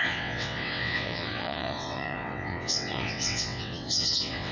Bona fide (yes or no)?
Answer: no